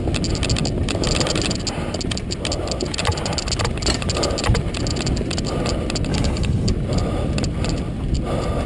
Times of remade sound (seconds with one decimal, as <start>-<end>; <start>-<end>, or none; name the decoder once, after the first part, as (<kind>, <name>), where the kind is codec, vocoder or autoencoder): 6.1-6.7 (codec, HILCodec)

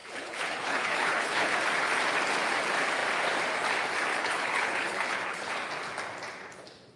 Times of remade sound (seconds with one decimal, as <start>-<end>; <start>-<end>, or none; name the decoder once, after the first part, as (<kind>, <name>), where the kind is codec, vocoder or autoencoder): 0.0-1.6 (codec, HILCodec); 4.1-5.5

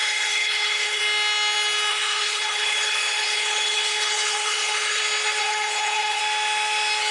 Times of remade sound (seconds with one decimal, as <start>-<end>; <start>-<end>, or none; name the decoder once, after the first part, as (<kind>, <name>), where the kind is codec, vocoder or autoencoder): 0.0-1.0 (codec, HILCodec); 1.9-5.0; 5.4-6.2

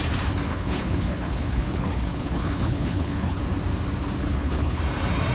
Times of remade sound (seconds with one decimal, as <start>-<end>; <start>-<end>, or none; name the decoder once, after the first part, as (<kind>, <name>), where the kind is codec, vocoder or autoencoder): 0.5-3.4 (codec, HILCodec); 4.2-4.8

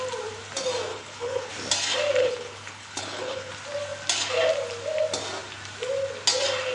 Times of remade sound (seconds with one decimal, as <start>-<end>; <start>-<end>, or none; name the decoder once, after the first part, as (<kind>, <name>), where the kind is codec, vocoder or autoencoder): 0.9-1.5 (codec, HILCodec); 2.2-3.5